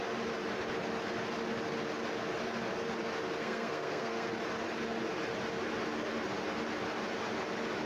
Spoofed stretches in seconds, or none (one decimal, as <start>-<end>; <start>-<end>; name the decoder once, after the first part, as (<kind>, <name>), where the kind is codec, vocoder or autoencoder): 3.4-4.3 (codec, SNAC)